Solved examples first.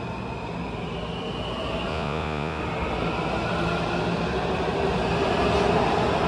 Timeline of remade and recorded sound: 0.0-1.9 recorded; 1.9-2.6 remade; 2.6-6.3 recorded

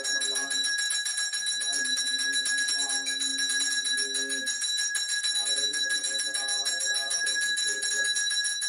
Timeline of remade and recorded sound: 0.0-8.7 recorded

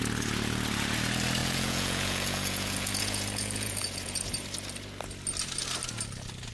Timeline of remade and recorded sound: 0.0-1.4 recorded; 1.4-4.3 remade; 4.3-6.5 recorded

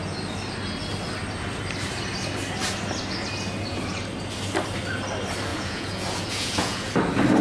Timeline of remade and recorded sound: 0.0-5.5 recorded; 5.5-6.9 remade; 6.9-7.4 recorded

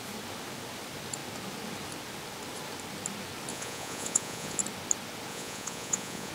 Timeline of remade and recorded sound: 0.0-3.5 recorded; 3.5-4.6 remade; 4.6-5.3 recorded; 5.3-6.3 remade